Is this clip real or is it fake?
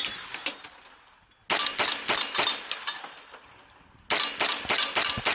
real